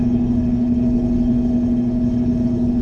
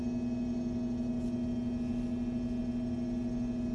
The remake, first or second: first